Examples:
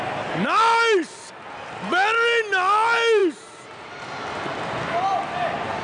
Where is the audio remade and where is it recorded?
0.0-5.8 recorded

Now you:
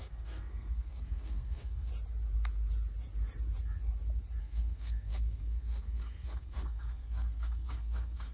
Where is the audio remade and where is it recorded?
0.0-1.9 remade; 1.9-4.4 recorded; 4.4-8.3 remade

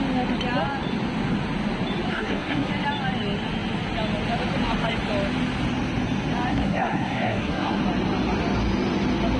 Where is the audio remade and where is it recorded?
0.0-2.1 recorded; 2.1-2.7 remade; 2.7-6.5 recorded; 6.5-7.8 remade; 7.8-9.4 recorded